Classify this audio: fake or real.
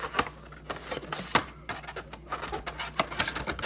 real